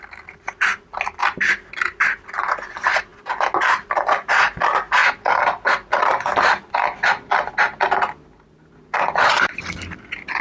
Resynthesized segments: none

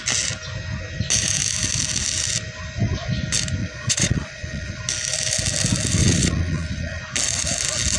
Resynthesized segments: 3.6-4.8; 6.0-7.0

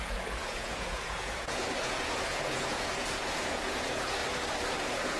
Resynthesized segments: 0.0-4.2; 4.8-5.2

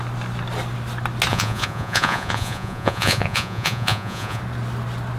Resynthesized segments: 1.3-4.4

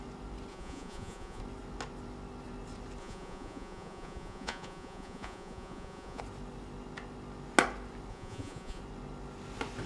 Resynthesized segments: 0.5-1.4; 3.0-6.2; 8.1-8.8

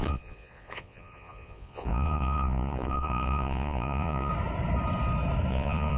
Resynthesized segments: 0.0-4.3; 5.5-6.0

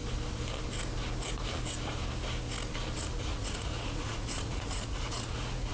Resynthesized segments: 3.3-5.7